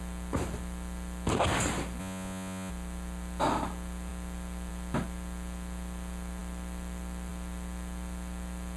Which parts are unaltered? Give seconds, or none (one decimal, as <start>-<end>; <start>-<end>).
0.0-2.0; 2.7-8.8